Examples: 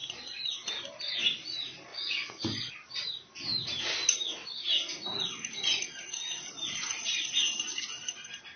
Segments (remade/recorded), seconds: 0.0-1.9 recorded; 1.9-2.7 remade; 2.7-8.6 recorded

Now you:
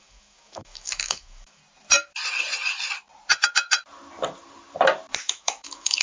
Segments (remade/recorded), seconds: 0.0-1.6 remade; 1.6-5.2 recorded; 5.2-6.0 remade

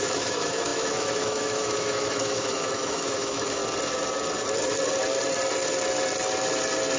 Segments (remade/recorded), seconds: 0.0-3.6 remade; 3.6-7.0 recorded

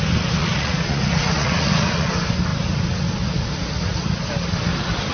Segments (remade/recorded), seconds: 0.0-0.4 recorded; 0.4-2.1 remade; 2.1-5.1 recorded

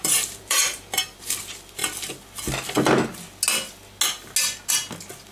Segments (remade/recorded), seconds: 0.0-1.4 remade; 1.4-5.3 recorded

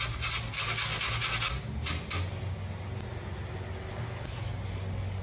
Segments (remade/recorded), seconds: 0.0-5.2 recorded